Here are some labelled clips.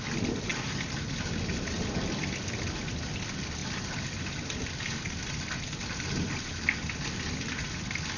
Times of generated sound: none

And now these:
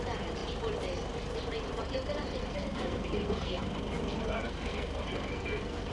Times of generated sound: 2.4-5.9 (codec, SNAC)